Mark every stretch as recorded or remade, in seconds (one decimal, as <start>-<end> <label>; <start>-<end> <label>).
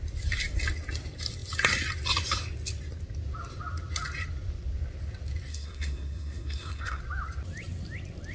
0.0-5.5 recorded; 5.5-7.0 remade; 7.0-8.3 recorded